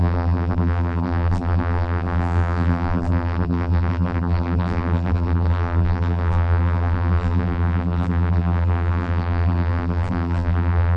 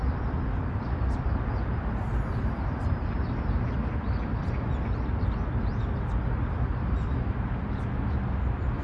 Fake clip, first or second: first